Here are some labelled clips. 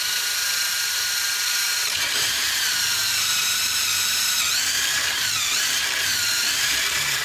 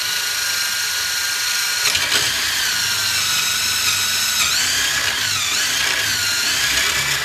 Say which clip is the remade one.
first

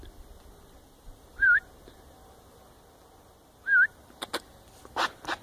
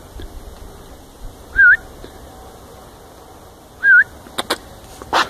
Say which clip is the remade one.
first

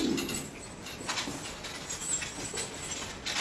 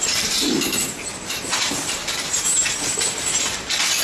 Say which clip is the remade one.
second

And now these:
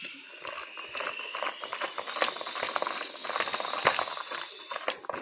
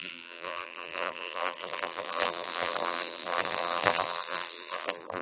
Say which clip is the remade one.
second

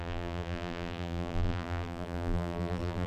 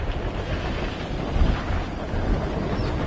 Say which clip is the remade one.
first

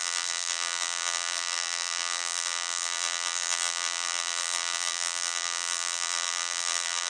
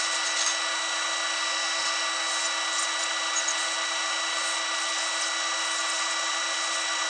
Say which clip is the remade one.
first